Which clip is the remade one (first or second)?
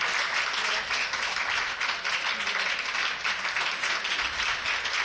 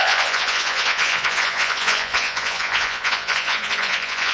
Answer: second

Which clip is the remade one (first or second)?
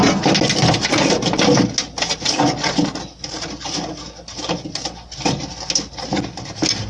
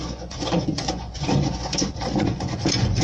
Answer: second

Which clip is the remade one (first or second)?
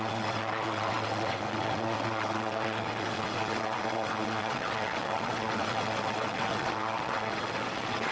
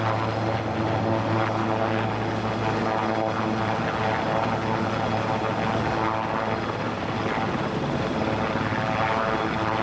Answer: first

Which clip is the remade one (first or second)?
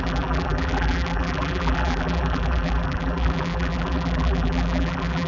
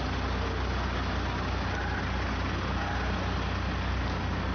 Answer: first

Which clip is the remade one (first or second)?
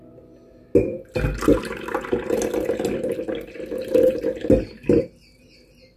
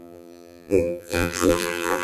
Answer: second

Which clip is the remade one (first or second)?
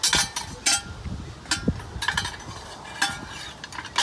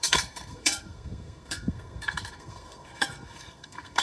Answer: second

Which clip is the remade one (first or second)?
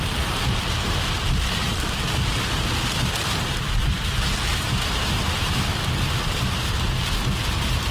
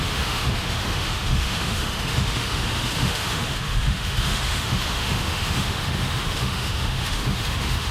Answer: second